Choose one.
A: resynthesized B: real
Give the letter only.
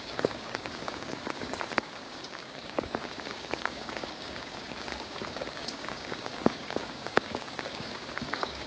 A